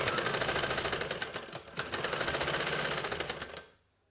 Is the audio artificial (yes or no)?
no